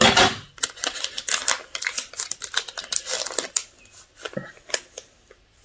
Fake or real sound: real